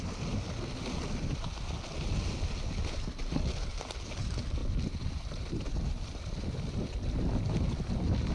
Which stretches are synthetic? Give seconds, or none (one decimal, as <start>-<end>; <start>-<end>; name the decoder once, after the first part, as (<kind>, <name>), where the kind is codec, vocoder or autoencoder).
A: 4.6-8.3 (vocoder, BigVGAN v2)